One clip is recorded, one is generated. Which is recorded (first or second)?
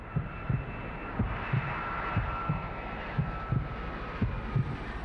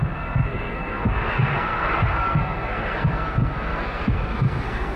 first